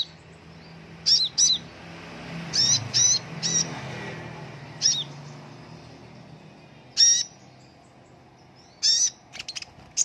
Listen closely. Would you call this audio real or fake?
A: real